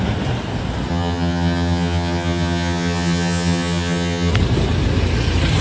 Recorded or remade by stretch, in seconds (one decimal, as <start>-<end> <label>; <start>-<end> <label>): 0.0-0.9 recorded; 0.9-4.3 remade; 4.3-5.6 recorded

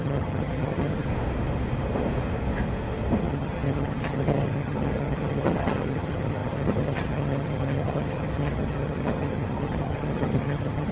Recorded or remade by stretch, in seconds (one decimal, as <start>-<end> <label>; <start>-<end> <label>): 0.0-1.1 remade; 1.1-3.2 recorded; 3.2-10.9 remade